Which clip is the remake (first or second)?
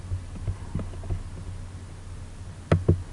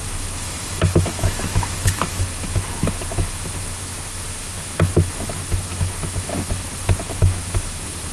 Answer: second